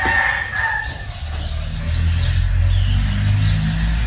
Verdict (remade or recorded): recorded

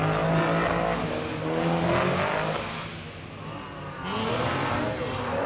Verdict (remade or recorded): recorded